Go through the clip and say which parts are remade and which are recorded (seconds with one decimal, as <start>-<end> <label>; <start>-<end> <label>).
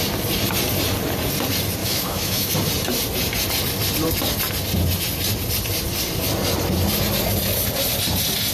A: 0.0-1.8 recorded; 1.8-2.5 remade; 2.5-8.5 recorded